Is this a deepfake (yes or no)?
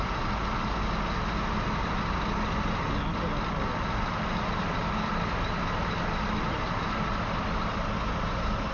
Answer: no